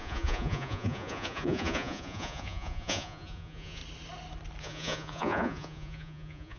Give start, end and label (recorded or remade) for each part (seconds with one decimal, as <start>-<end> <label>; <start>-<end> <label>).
0.0-3.8 remade; 3.8-4.6 recorded; 4.6-6.6 remade